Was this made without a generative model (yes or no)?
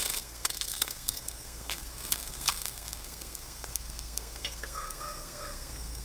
no